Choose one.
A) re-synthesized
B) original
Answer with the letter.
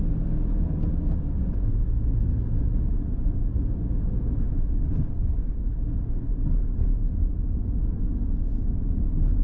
B